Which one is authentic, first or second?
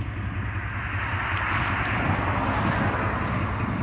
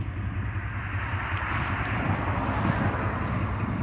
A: first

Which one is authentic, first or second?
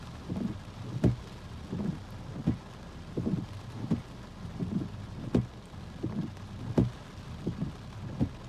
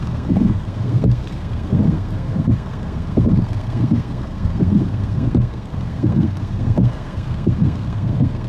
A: first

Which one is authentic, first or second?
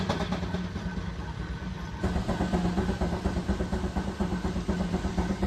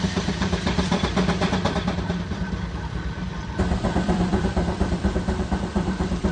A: first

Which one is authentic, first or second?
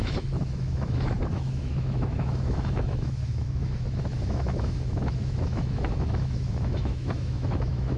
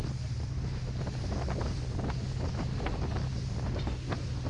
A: second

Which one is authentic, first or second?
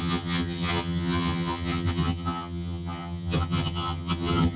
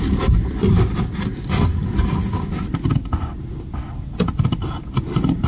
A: second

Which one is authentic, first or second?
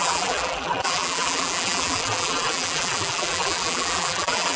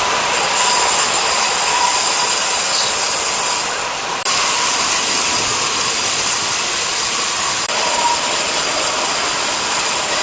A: second